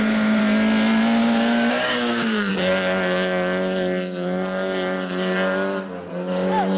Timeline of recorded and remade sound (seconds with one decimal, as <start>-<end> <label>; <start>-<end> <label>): 0.0-0.4 remade; 0.4-1.7 recorded; 1.7-2.5 remade; 2.5-6.8 recorded